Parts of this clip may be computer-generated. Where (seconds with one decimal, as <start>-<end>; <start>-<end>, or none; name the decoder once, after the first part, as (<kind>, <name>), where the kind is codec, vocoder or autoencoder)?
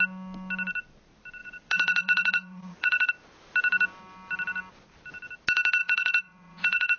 1.4-3.1 (vocoder, Vocos); 5.8-7.0